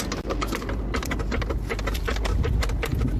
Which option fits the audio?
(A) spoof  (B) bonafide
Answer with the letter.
B